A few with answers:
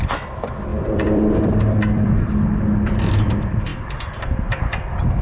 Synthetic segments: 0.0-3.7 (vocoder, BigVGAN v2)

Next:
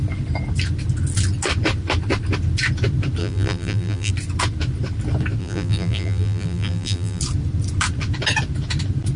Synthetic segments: 3.2-4.1 (vocoder, BigVGAN v2); 5.4-7.2

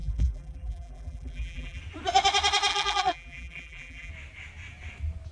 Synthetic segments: 0.0-1.8 (vocoder, BigVGAN v2); 2.7-4.1

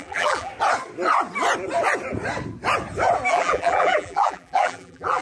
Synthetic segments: 0.0-0.5 (vocoder, BigVGAN v2); 3.3-5.2

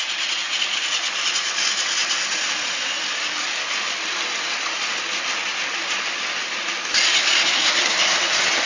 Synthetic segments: none

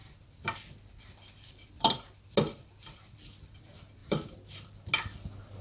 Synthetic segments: none

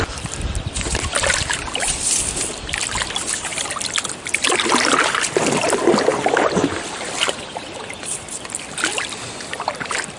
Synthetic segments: 0.0-10.2 (vocoder, BigVGAN v2)

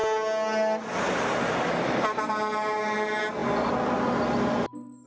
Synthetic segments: none